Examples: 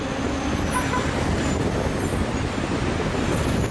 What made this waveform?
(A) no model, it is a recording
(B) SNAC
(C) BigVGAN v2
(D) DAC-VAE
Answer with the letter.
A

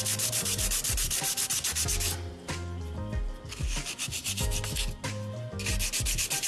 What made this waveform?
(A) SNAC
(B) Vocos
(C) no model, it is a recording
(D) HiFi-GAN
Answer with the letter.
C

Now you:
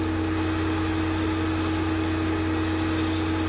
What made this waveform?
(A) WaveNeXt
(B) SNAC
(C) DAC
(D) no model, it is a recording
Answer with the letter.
D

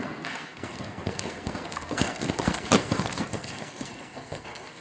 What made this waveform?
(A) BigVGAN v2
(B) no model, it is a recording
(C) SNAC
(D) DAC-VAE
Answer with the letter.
C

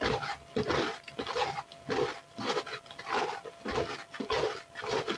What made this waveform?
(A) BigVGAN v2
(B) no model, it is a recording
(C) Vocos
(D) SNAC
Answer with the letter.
B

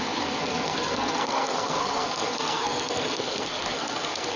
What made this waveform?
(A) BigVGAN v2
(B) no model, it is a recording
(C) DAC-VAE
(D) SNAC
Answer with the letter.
D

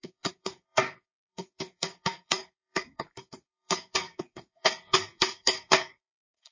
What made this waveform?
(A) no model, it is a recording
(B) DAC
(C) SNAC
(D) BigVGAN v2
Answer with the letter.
C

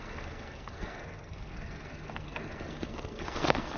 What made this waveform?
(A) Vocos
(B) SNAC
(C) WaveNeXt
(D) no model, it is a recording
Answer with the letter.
B